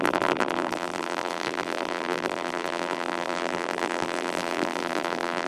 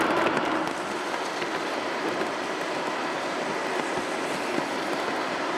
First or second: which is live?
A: second